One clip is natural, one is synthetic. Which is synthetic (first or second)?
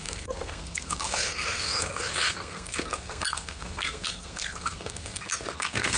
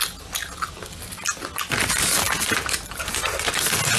first